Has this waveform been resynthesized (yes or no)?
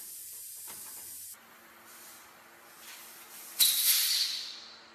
no